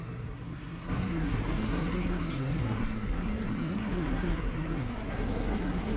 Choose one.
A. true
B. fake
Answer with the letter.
B